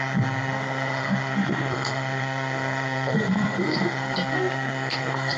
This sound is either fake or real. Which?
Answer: fake